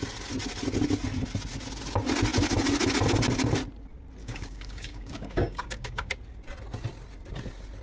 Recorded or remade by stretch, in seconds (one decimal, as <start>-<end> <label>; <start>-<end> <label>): 0.0-4.2 recorded; 4.2-6.1 remade; 6.1-7.8 recorded